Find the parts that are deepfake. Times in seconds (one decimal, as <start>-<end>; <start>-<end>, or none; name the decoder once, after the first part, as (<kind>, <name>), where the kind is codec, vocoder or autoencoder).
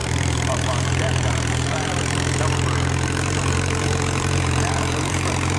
0.0-5.6 (vocoder, BigVGAN v2)